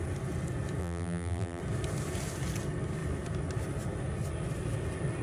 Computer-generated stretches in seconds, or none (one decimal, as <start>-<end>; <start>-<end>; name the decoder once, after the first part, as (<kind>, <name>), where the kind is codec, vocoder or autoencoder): 0.8-1.6 (vocoder, BigVGAN v2)

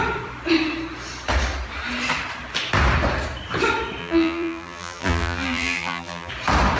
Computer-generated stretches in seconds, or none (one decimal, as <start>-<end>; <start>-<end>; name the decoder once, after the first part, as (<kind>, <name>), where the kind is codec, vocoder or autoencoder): 4.0-6.3 (vocoder, BigVGAN v2)

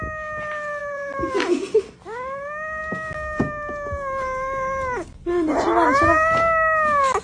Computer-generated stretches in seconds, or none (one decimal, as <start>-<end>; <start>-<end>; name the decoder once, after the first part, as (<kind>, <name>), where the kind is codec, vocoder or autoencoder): 0.8-1.3 (vocoder, BigVGAN v2)

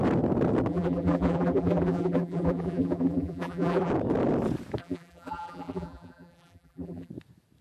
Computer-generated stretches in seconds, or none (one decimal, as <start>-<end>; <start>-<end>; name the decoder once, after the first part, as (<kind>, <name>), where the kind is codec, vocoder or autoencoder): 0.7-3.9 (vocoder, BigVGAN v2); 4.8-7.1

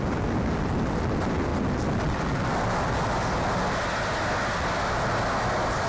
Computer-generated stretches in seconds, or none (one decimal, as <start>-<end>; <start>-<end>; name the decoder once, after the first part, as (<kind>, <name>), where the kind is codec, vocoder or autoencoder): 1.5-2.2 (vocoder, BigVGAN v2)

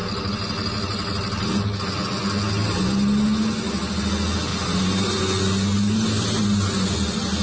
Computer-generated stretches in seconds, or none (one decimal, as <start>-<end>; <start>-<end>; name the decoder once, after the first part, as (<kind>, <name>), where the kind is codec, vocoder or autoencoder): 4.5-5.2 (vocoder, BigVGAN v2); 5.7-6.9

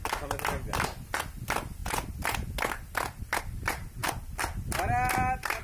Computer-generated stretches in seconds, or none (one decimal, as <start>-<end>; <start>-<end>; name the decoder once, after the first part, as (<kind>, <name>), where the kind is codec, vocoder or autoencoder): none

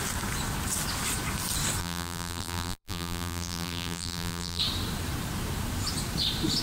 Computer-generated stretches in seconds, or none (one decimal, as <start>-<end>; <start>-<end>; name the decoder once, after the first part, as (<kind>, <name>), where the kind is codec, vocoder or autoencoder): 1.8-4.6 (vocoder, BigVGAN v2)